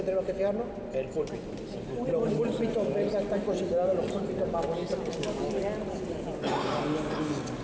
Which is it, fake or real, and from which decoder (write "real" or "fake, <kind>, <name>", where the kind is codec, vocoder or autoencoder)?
real